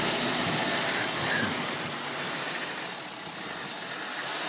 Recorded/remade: recorded